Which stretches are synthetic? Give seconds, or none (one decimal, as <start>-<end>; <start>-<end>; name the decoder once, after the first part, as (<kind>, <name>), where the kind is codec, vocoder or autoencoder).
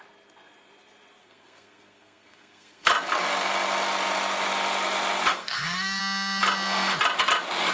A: 1.2-2.9 (codec, SNAC); 5.3-6.0